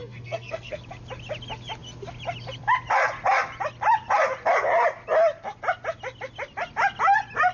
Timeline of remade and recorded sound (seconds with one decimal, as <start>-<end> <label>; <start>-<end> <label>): 0.0-0.8 remade; 0.8-7.5 recorded